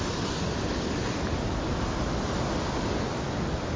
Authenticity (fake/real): real